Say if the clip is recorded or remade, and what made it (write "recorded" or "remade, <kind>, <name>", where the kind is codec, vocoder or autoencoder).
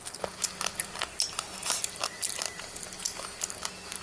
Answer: recorded